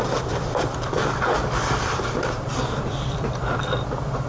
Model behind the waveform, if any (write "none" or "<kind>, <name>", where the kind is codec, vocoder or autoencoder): vocoder, BigVGAN v2